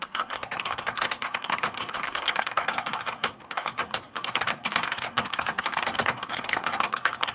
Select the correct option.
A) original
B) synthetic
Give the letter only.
B